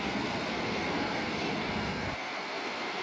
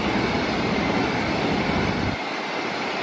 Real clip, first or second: second